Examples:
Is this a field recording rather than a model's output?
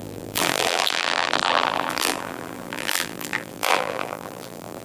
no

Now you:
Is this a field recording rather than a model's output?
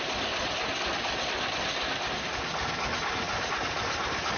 yes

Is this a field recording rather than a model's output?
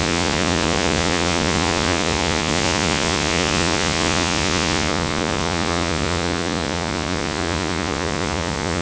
no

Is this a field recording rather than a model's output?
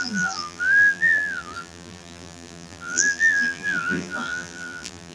no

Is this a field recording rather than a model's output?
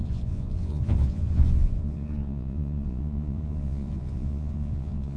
no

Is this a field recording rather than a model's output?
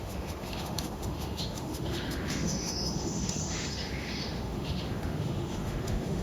no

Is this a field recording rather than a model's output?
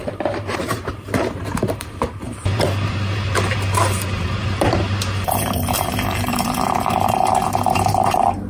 no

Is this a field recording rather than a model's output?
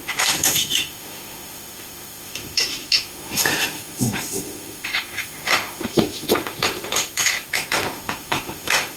no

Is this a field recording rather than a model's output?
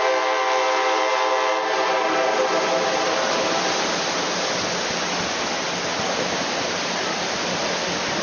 yes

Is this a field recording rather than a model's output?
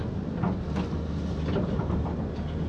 yes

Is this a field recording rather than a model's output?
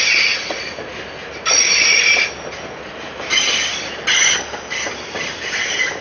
yes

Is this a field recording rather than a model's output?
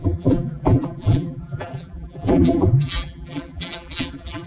no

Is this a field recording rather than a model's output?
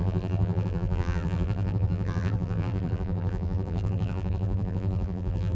no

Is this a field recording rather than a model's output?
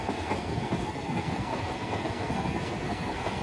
no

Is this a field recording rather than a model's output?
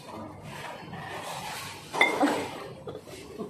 yes